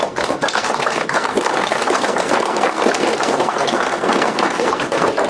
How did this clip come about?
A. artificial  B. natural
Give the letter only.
A